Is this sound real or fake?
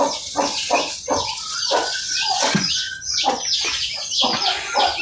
fake